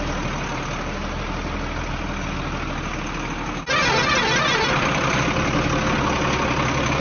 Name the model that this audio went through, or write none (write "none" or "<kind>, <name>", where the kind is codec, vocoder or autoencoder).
none